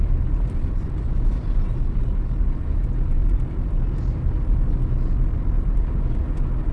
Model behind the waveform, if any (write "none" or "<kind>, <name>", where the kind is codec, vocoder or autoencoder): none